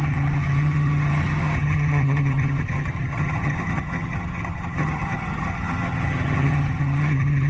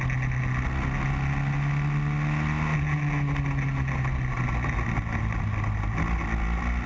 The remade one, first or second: first